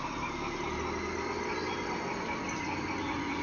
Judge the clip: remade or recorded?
recorded